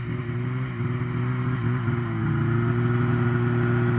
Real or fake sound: real